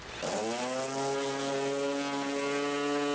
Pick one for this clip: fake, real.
real